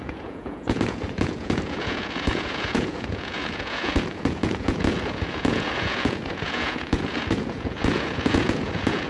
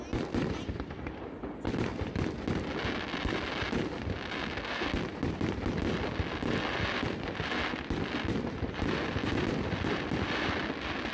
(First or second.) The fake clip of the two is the first